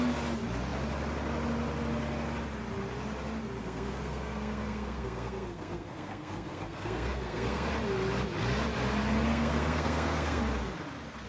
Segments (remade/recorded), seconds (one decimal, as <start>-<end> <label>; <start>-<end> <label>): 0.0-3.6 recorded; 3.6-7.7 remade; 7.7-9.3 recorded; 9.3-10.4 remade; 10.4-11.3 recorded